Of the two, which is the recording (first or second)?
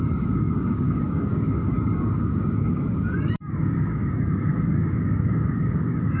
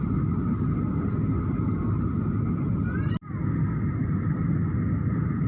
second